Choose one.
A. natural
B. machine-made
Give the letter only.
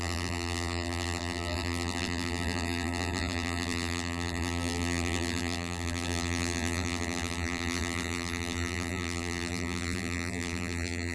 B